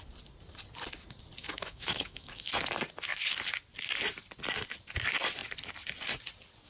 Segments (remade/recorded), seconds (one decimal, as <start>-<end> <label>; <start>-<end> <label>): 0.0-1.4 recorded; 1.4-2.5 remade; 2.5-6.7 recorded